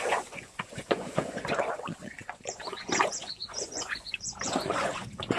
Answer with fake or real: fake